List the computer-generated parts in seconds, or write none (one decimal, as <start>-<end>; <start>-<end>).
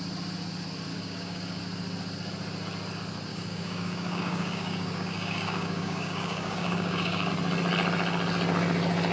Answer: 0.9-1.6; 3.3-7.3